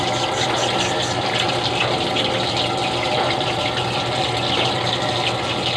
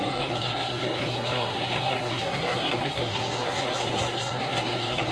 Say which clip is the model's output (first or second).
second